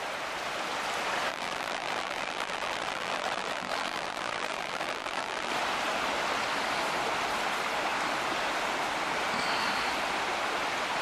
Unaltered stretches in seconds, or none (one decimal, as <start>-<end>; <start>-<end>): 0.0-1.3; 5.5-11.0